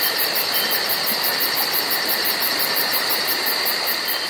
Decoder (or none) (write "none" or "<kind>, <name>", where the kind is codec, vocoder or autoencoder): vocoder, BigVGAN v2